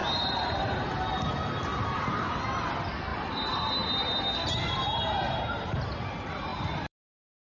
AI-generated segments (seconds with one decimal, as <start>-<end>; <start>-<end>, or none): 3.1-3.7; 6.5-7.4